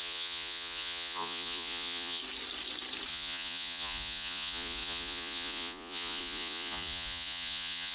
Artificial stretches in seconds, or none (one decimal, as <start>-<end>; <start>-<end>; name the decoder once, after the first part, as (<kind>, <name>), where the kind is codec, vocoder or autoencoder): 0.0-2.2 (vocoder, Vocos); 3.1-7.9